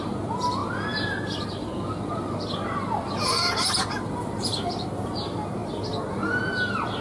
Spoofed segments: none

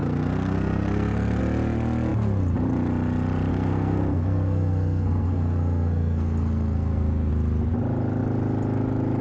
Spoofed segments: 0.0-1.4 (codec, SNAC); 3.5-7.3

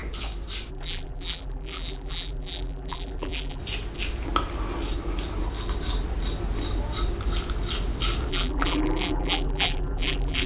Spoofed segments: 0.7-3.6 (vocoder, BigVGAN v2); 8.3-10.5

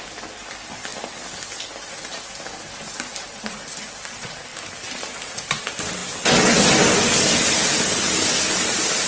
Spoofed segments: none

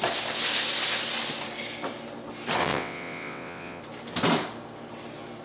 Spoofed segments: 2.6-3.8 (vocoder, WaveNeXt)

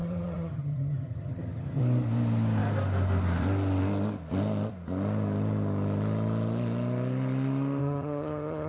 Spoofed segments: 0.0-1.8 (vocoder, HiFi-GAN); 7.8-8.7

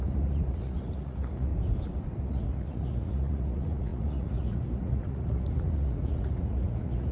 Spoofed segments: 0.0-1.5 (vocoder, Vocos); 2.2-7.1